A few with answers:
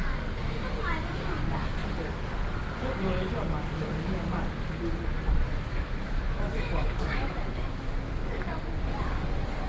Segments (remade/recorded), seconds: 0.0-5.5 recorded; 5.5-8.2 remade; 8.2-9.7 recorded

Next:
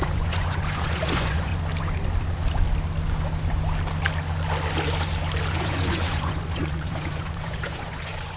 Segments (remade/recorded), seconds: 0.0-1.5 remade; 1.5-5.5 recorded; 5.5-8.4 remade

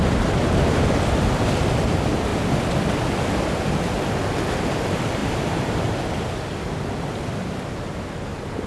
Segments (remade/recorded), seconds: 0.0-8.7 recorded

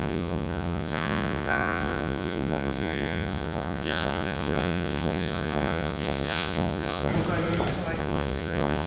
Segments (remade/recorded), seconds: 0.0-7.1 remade; 7.1-8.0 recorded; 8.0-8.9 remade

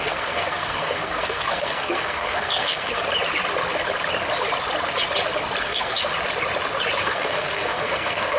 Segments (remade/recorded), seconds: 0.0-3.0 remade; 3.0-5.6 recorded; 5.6-6.1 remade; 6.1-7.0 recorded; 7.0-8.4 remade

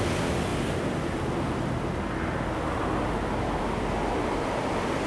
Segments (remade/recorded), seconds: 0.0-5.1 recorded

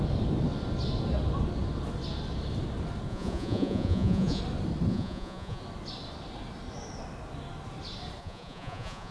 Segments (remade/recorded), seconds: 0.0-3.1 recorded; 3.1-4.4 remade; 4.4-4.9 recorded; 4.9-5.6 remade; 5.6-8.2 recorded; 8.2-9.1 remade